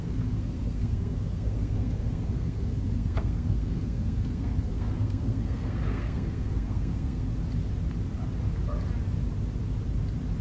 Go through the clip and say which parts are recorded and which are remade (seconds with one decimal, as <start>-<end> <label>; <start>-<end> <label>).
0.0-7.3 remade; 7.3-10.4 recorded